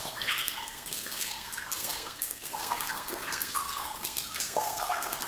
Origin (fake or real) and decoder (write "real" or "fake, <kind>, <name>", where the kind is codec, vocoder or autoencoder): fake, codec, SNAC